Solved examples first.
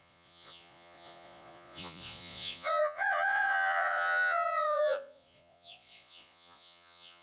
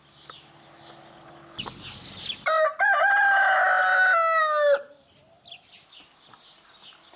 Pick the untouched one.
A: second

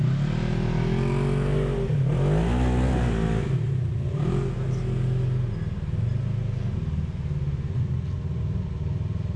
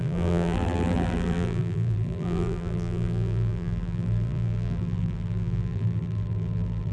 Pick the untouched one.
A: first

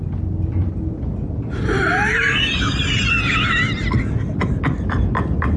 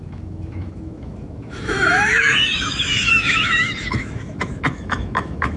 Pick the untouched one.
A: first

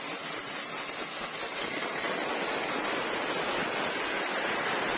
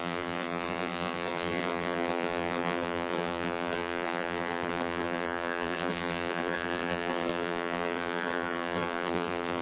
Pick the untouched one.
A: first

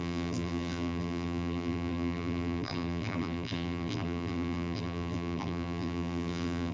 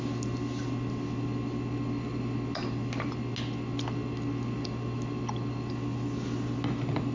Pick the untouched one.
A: second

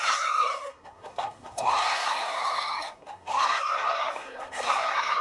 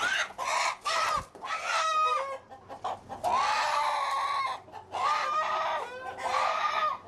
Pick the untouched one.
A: second